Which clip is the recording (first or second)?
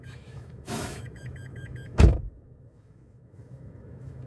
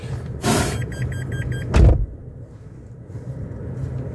second